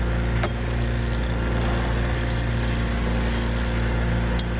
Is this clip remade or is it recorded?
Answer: recorded